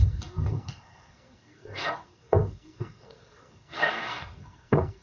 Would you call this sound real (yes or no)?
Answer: no